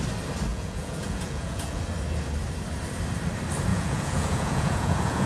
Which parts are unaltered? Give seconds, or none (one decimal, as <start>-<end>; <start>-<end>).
0.0-0.5; 1.8-3.7